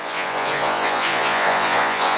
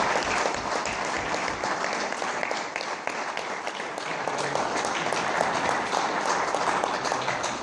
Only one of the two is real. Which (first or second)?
second